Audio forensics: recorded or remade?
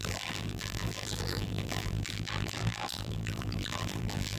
remade